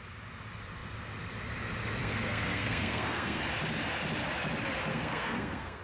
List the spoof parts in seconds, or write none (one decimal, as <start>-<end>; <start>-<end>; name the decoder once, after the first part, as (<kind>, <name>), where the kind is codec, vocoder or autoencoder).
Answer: 2.0-3.4 (codec, SNAC); 4.9-5.8